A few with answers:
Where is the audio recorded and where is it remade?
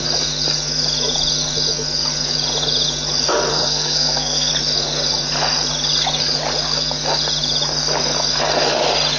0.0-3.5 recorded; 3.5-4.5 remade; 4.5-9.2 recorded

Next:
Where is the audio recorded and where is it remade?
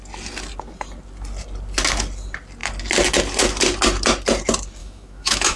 0.0-4.8 recorded; 4.8-5.6 remade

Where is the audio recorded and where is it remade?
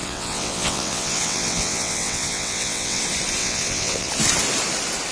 0.0-3.0 remade; 3.0-3.4 recorded; 3.4-4.1 remade; 4.1-5.1 recorded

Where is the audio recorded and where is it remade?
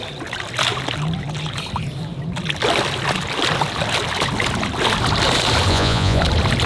0.0-5.7 recorded; 5.7-6.2 remade; 6.2-6.7 recorded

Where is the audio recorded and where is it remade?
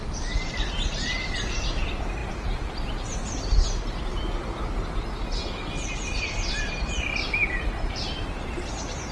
0.0-9.1 recorded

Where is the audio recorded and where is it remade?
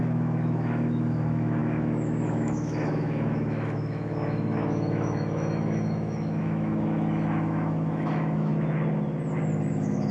0.0-8.5 remade; 8.5-9.7 recorded; 9.7-10.1 remade